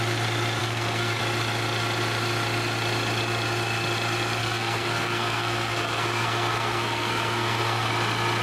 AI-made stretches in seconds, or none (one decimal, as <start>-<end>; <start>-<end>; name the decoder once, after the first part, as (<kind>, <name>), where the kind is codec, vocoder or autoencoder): 0.6-1.2 (codec, SNAC); 4.4-7.9